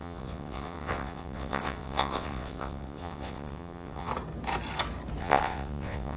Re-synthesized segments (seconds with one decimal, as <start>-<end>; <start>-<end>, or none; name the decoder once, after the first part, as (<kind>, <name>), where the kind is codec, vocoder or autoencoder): 0.0-4.1 (vocoder, WaveNeXt); 5.2-6.2

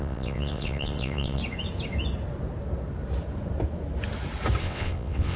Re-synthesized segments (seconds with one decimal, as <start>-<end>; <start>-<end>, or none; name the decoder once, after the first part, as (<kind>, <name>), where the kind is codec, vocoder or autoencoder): 0.0-1.4 (vocoder, WaveNeXt); 4.6-5.4

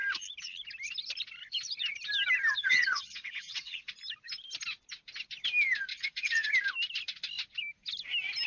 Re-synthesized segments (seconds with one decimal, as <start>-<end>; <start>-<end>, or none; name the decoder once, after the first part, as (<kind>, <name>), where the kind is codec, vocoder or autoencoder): 2.6-3.9 (vocoder, WaveNeXt); 5.9-6.5